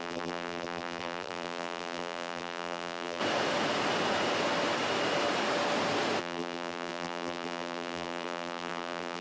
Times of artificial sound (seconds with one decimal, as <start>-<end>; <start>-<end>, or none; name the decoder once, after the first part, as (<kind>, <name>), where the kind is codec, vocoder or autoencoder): 0.0-3.2 (vocoder, BigVGAN v2); 6.2-9.2